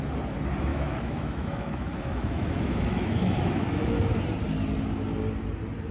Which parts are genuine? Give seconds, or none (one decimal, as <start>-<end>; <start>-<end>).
0.0-0.7; 4.2-5.9